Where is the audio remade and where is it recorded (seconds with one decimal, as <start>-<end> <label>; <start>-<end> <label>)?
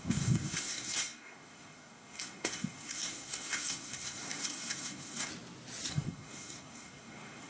0.0-5.3 remade; 5.3-5.9 recorded; 5.9-7.5 remade